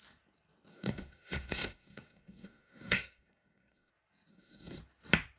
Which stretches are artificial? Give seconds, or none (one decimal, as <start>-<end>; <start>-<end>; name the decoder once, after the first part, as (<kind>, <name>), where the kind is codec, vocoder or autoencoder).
0.7-3.9 (codec, SNAC); 4.3-4.8